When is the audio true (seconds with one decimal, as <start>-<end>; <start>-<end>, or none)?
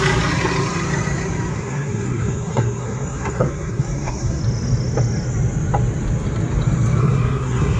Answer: 0.0-1.5; 4.4-7.0